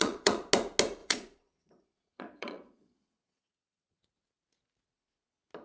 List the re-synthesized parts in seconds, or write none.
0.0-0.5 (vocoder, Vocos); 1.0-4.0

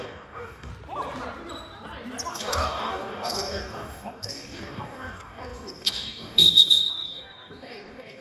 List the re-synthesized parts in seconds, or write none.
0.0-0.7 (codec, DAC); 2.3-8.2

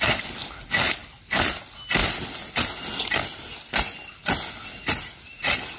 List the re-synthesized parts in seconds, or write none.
none

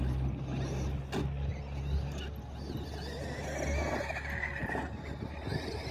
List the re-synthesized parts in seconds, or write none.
4.6-5.9 (vocoder, BigVGAN v2)

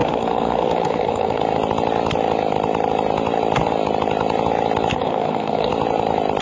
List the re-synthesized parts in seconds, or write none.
0.0-1.4 (codec, SNAC); 4.9-5.7